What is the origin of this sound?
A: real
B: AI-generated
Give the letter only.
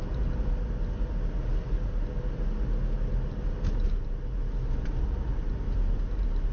A